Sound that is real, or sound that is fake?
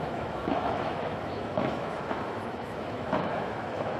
fake